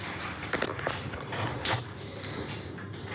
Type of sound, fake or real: fake